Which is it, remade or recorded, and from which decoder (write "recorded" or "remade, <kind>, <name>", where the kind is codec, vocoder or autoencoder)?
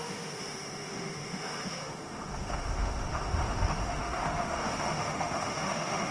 remade, autoencoder, DAC-VAE